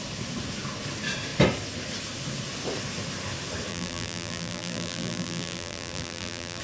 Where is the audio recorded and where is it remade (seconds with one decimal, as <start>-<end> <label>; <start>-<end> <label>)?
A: 0.0-3.7 recorded; 3.7-6.6 remade